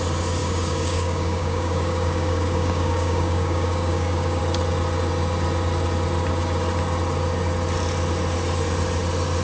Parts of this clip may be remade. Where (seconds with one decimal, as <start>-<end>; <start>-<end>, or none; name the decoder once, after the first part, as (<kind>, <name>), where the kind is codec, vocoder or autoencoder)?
0.4-4.4 (codec, DAC)